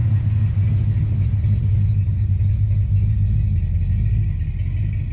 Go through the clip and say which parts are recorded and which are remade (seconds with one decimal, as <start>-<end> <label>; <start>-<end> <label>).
0.0-5.1 recorded